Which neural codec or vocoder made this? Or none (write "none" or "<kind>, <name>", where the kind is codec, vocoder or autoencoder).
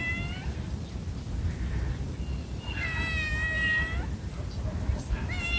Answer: none